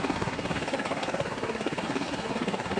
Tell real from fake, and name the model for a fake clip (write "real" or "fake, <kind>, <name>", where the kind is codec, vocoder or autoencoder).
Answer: fake, codec, SNAC